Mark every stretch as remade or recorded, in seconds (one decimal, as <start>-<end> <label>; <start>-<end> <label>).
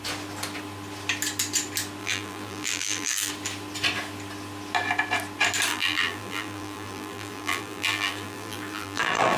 0.0-2.0 recorded; 2.0-3.3 remade; 3.3-5.7 recorded; 5.7-9.4 remade